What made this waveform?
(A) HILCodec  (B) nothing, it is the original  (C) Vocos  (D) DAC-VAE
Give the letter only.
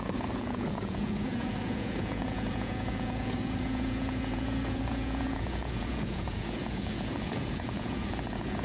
C